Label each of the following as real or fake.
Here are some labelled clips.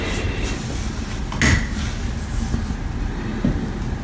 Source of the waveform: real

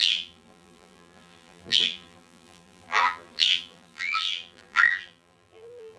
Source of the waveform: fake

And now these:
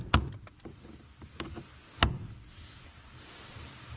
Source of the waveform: real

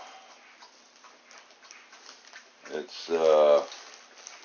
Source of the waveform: real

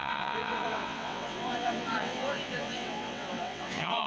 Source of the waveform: fake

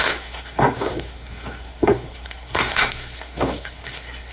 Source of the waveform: fake